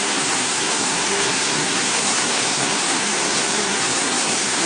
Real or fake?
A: fake